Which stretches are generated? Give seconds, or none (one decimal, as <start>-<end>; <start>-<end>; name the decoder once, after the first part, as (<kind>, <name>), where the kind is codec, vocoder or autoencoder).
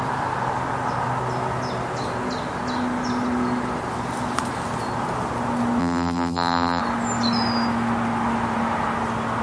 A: 5.8-6.8 (vocoder, BigVGAN v2)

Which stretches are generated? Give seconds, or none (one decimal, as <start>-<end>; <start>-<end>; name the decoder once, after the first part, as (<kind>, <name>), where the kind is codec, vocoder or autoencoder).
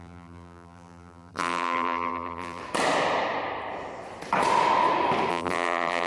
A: 0.0-2.6 (vocoder, BigVGAN v2); 5.3-6.1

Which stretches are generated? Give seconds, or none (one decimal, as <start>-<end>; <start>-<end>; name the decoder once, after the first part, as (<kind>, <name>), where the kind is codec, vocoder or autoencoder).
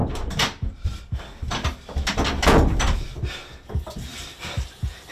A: 0.0-0.7 (vocoder, BigVGAN v2); 1.5-2.1; 4.1-5.1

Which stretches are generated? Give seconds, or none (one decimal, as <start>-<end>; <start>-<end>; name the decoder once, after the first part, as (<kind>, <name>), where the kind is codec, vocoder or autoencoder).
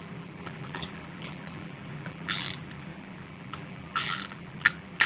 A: 0.0-5.1 (vocoder, BigVGAN v2)